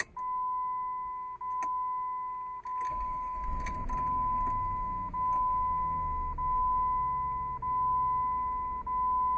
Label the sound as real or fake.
real